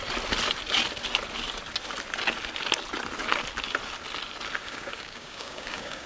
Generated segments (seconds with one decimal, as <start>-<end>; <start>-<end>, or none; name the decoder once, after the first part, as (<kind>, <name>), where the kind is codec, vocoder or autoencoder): 4.6-6.1 (codec, DAC)